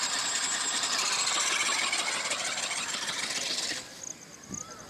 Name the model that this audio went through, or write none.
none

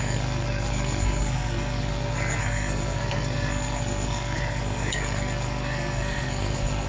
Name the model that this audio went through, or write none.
codec, SNAC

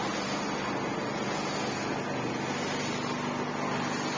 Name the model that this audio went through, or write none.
none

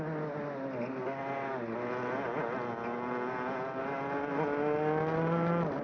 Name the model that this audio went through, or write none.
none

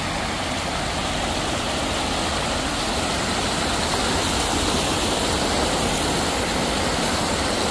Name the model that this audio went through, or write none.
none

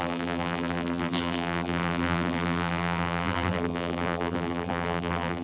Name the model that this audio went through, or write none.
vocoder, BigVGAN v2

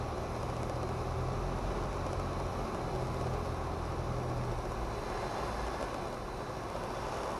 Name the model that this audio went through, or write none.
none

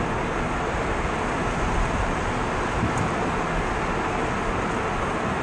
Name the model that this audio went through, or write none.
none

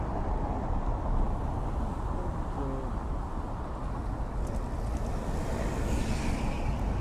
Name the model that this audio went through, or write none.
none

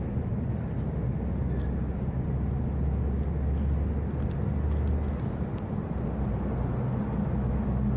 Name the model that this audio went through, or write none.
none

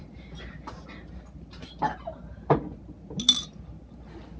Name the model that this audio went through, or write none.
none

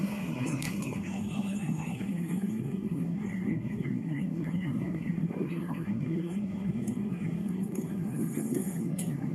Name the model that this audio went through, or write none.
codec, SNAC